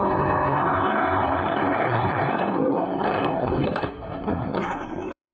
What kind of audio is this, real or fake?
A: fake